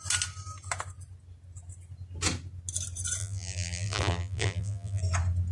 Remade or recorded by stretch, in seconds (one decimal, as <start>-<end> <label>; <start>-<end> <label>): 0.0-3.2 recorded; 3.2-5.0 remade; 5.0-5.5 recorded

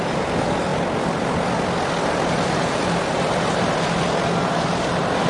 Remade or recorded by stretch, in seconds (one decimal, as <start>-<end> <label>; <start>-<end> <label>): 0.0-0.7 remade; 0.7-2.3 recorded; 2.3-5.3 remade

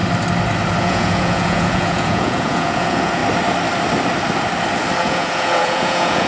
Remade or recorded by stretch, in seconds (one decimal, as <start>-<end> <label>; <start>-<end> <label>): 0.0-0.8 recorded; 0.8-3.2 remade; 3.2-5.0 recorded; 5.0-6.3 remade